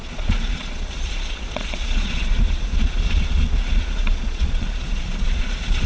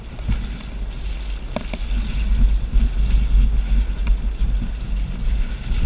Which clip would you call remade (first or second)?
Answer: first